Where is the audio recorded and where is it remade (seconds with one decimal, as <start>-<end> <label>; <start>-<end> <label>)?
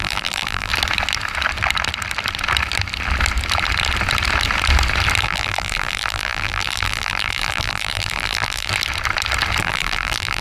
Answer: 0.0-0.7 remade; 0.7-5.2 recorded; 5.2-8.7 remade; 8.7-9.6 recorded; 9.6-10.4 remade